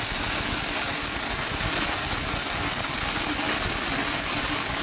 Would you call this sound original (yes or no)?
yes